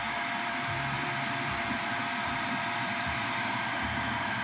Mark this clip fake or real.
fake